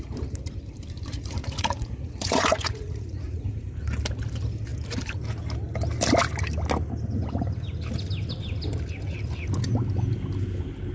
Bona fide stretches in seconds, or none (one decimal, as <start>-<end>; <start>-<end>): 0.0-1.1; 3.8-10.9